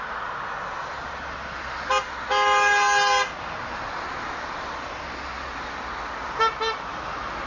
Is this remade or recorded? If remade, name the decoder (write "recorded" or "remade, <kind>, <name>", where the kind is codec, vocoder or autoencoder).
recorded